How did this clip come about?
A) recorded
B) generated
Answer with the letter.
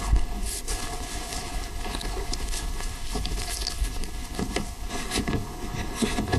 B